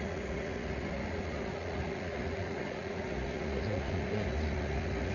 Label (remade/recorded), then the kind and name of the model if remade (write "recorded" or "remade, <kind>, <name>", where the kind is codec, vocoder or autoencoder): remade, vocoder, Vocos